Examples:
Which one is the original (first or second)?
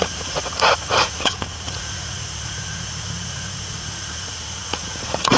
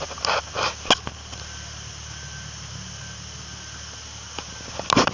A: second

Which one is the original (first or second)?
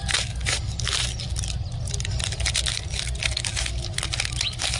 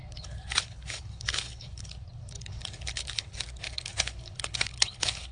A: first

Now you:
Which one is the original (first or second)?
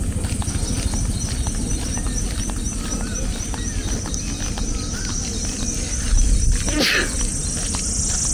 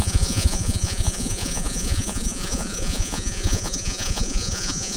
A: first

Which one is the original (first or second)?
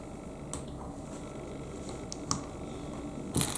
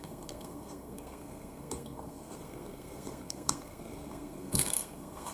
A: first